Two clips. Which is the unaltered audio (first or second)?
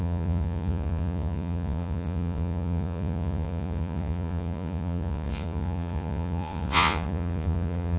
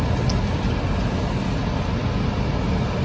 second